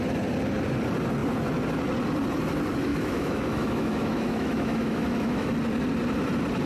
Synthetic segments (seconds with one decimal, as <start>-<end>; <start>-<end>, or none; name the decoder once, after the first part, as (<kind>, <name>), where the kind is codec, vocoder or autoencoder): 2.9-5.5 (autoencoder, DAC-VAE)